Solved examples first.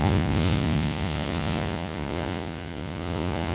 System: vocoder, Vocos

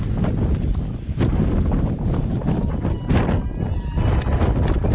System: none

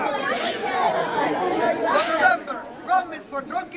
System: vocoder, Vocos